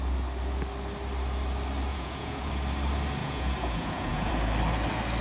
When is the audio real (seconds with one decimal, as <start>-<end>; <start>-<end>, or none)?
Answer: 0.0-1.9; 2.5-3.2; 4.3-5.2